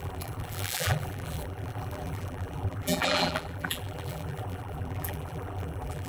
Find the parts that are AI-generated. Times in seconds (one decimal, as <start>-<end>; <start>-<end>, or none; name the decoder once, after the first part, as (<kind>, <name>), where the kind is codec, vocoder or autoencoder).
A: 0.0-6.1 (vocoder, BigVGAN v2)